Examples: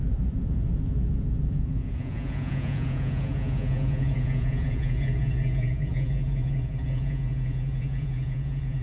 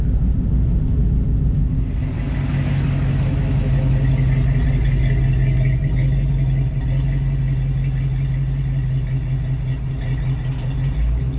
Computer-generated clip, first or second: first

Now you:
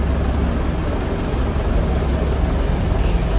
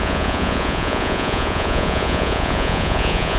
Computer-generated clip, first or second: second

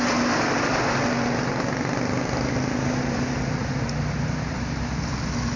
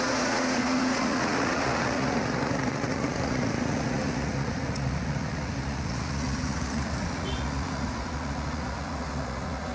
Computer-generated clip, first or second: second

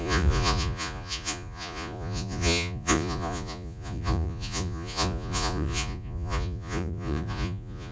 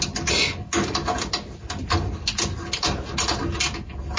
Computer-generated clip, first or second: first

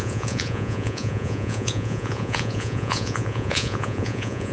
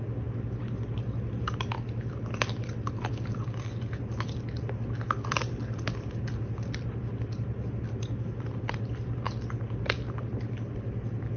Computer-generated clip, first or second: first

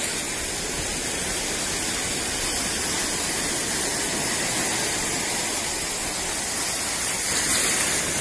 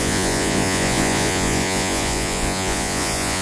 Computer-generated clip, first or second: second